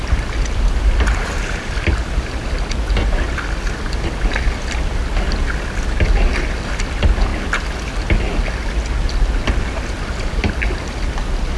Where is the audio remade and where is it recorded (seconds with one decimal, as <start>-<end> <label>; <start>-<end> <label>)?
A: 0.0-11.6 recorded